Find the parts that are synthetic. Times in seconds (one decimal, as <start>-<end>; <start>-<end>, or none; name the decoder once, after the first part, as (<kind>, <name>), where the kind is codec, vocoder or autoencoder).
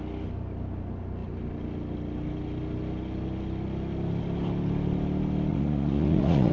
5.5-6.5 (vocoder, Vocos)